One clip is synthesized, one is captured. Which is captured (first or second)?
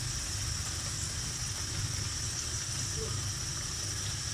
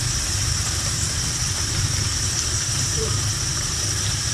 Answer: first